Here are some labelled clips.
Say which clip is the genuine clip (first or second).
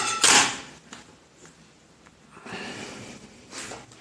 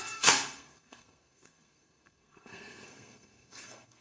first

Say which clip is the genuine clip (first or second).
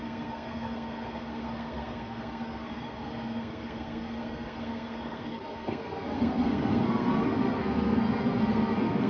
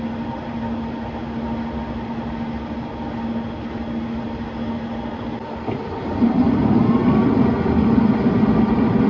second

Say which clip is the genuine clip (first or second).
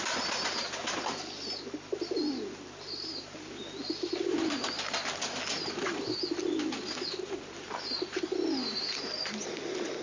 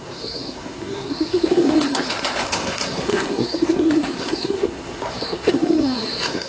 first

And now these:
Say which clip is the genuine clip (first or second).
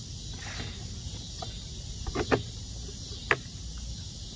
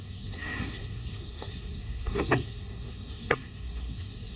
first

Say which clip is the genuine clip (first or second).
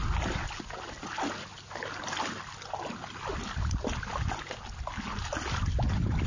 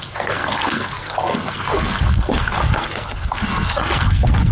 first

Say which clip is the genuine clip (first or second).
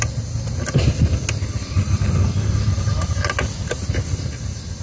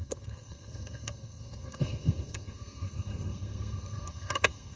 first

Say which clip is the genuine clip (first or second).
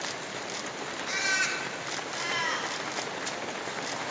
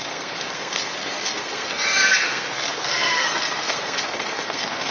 first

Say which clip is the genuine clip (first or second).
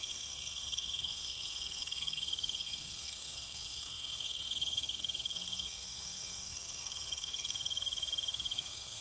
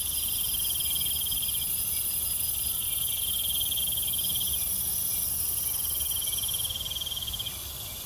second